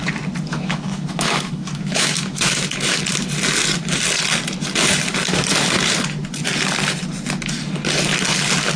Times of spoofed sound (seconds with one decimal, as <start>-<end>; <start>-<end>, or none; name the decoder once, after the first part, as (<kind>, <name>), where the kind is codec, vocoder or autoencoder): 0.5-3.0 (autoencoder, DAC-VAE)